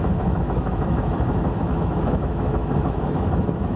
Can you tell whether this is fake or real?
fake